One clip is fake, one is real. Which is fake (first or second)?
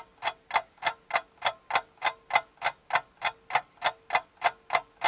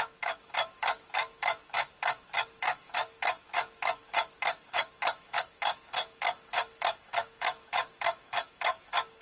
second